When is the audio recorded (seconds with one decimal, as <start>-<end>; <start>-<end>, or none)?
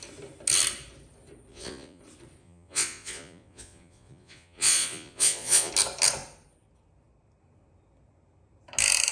0.0-1.5; 2.0-2.4; 5.7-9.1